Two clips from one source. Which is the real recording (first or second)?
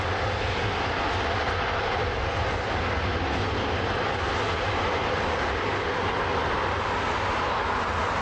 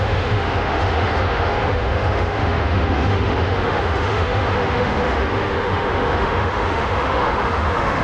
first